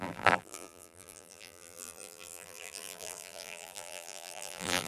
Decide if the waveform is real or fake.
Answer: fake